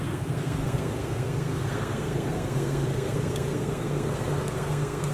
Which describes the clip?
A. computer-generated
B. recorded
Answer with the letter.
A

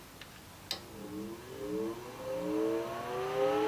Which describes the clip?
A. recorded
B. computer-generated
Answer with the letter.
A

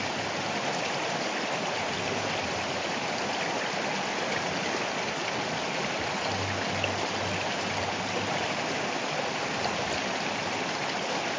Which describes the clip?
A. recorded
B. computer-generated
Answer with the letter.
A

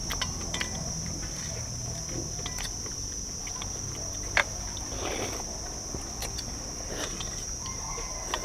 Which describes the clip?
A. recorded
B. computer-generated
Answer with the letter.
A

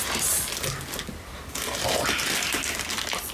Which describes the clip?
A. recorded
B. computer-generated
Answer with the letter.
A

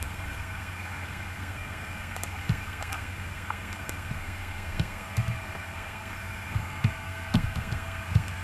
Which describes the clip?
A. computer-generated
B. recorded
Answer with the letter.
A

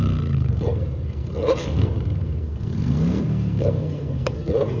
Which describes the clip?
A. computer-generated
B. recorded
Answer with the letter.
A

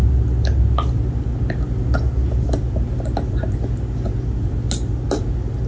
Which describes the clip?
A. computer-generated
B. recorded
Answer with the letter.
B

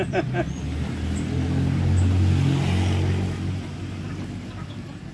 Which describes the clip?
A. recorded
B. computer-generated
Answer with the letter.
A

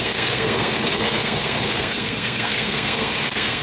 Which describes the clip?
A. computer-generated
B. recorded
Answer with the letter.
A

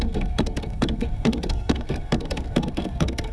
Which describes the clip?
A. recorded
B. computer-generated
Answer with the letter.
B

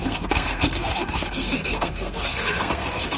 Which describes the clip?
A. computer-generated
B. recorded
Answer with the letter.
A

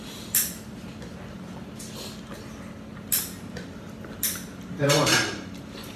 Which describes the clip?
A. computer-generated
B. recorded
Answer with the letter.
B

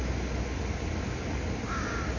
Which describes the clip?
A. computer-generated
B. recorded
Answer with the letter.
B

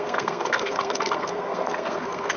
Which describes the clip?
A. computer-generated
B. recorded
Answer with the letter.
A